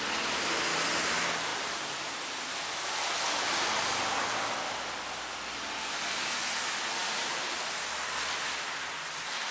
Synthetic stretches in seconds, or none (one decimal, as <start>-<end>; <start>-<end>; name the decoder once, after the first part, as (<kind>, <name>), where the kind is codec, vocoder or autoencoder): none